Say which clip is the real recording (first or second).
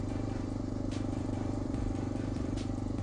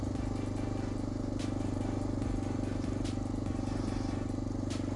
second